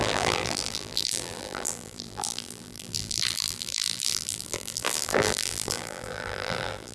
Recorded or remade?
remade